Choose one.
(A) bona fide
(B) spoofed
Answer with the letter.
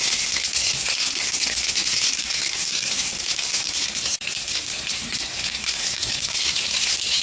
B